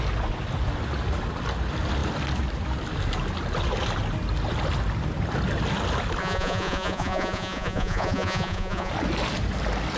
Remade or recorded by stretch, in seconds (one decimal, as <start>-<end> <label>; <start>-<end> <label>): 0.0-6.2 recorded; 6.2-8.9 remade; 8.9-10.0 recorded